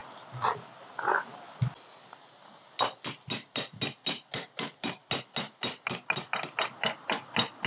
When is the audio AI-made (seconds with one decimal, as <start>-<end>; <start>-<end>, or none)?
none